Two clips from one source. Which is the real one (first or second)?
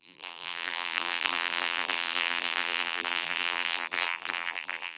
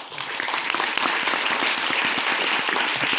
second